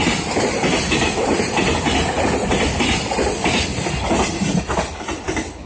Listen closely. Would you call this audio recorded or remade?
recorded